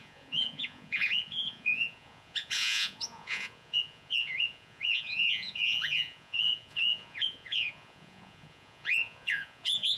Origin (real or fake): fake